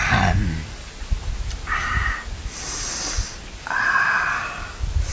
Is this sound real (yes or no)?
yes